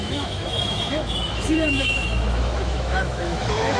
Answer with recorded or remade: remade